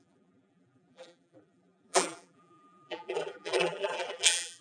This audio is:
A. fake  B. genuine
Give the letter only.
A